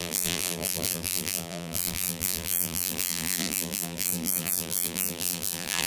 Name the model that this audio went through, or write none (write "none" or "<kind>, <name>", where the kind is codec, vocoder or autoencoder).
vocoder, BigVGAN v2